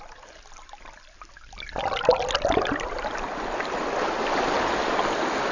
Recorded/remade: recorded